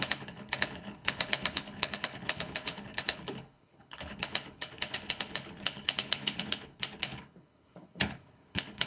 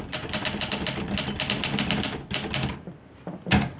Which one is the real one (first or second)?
second